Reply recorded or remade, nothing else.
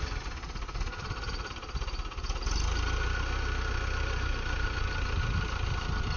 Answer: recorded